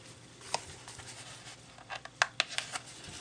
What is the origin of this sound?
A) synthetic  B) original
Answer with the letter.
B